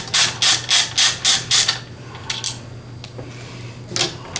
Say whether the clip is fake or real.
real